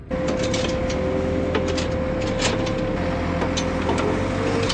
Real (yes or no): yes